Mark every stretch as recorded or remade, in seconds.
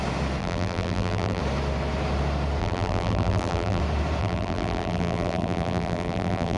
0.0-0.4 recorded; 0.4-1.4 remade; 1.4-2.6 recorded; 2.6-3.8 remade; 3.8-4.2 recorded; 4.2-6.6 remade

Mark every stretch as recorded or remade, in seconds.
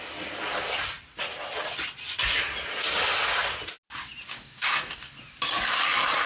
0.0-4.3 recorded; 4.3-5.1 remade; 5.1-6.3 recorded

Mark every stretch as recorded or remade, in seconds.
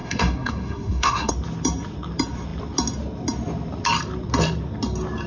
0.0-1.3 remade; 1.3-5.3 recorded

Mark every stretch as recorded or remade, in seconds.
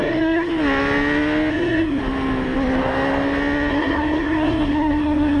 0.0-0.5 remade; 0.5-1.5 recorded; 1.5-2.0 remade; 2.0-3.7 recorded; 3.7-5.4 remade